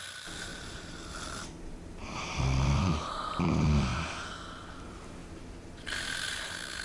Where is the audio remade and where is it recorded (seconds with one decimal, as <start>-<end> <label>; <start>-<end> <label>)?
0.0-3.9 remade; 3.9-4.8 recorded; 4.8-5.2 remade; 5.2-6.8 recorded